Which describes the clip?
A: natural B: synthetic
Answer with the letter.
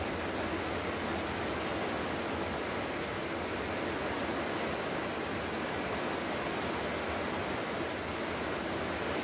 A